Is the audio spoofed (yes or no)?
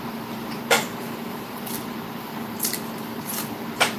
yes